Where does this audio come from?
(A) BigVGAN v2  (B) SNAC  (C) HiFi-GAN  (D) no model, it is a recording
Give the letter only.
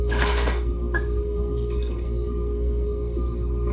B